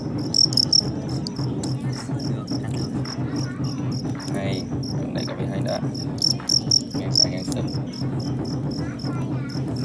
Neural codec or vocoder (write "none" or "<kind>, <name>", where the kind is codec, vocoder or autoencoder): none